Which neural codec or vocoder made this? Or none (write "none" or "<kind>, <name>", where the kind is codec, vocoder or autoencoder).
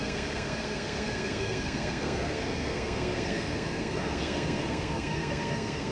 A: codec, SNAC